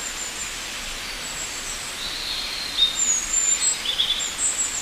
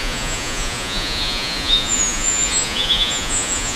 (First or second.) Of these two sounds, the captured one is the first